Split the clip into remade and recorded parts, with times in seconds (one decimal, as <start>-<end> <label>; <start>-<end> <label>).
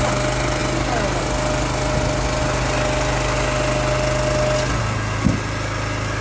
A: 0.0-6.2 recorded